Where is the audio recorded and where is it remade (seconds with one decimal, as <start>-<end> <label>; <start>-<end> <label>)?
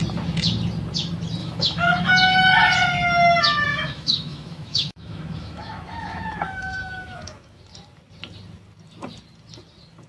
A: 0.0-1.4 recorded; 1.4-2.1 remade; 2.1-3.7 recorded; 3.7-7.6 remade; 7.6-10.1 recorded